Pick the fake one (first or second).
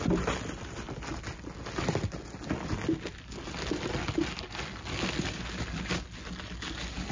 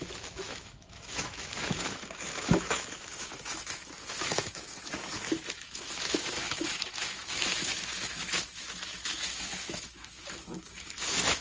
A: second